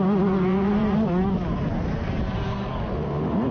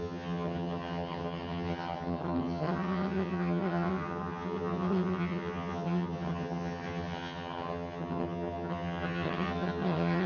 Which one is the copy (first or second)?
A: second